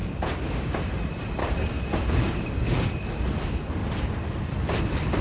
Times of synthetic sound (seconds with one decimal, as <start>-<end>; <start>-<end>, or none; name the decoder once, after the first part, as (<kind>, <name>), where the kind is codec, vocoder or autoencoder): 0.0-0.9 (codec, DAC); 1.4-2.9